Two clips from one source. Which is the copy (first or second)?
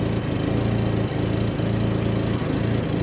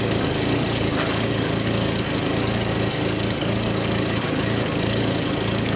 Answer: second